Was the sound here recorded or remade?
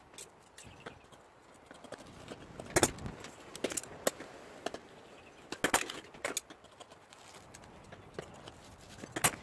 recorded